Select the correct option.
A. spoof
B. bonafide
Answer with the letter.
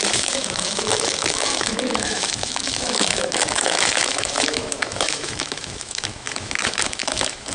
A